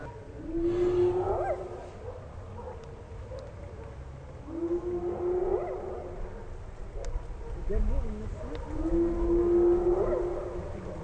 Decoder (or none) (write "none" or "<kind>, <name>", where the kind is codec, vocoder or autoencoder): none